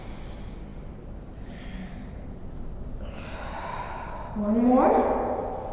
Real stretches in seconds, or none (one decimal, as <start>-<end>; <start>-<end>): 0.0-5.7